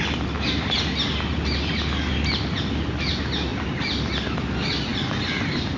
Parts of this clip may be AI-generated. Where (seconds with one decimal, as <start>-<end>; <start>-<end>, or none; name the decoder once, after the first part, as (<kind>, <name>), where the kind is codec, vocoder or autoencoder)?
none

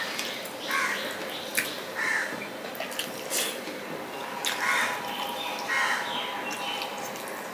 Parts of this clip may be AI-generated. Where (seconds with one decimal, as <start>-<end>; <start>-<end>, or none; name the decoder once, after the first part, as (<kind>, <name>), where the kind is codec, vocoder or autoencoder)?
none

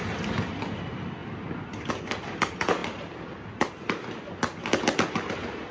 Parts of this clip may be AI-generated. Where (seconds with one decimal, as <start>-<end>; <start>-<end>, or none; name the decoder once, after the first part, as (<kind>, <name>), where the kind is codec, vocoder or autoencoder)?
none

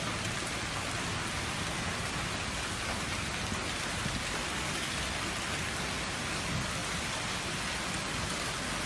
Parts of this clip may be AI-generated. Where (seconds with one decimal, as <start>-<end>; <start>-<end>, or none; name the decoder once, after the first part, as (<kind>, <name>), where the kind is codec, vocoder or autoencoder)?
none

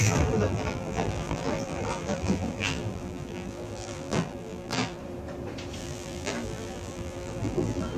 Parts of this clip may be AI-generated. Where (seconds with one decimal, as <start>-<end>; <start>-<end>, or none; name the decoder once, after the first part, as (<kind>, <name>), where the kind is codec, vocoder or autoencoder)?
0.0-5.0 (vocoder, BigVGAN v2); 5.8-8.0

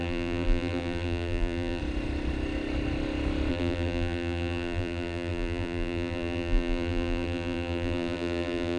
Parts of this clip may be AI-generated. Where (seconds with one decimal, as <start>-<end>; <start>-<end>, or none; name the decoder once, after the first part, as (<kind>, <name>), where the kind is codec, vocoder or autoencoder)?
0.0-1.8 (vocoder, BigVGAN v2); 3.5-8.8